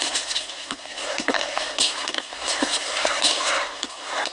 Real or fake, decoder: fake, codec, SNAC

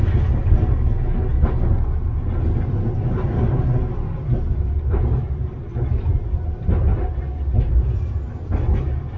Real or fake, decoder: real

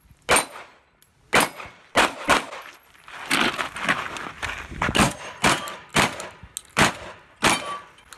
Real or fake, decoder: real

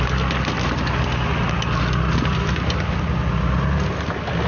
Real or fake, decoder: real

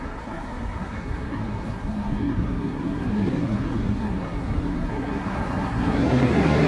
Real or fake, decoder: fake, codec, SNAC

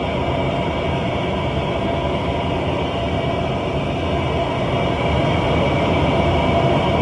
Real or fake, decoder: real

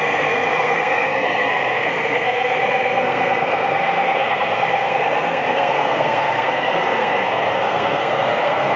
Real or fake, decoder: fake, codec, SNAC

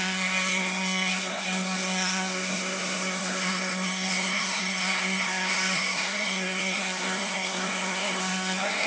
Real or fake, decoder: fake, codec, SNAC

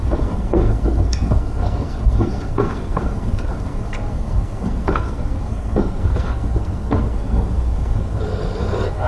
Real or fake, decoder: fake, codec, SNAC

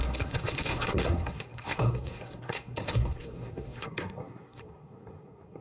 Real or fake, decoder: fake, codec, SNAC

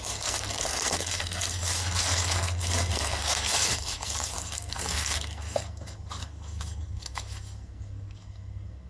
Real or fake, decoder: fake, codec, SNAC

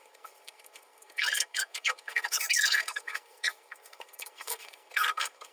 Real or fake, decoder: fake, codec, SNAC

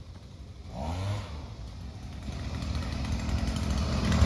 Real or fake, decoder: real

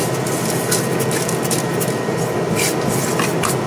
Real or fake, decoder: real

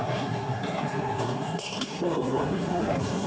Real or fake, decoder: fake, codec, SNAC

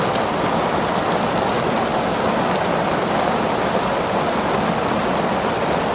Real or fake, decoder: real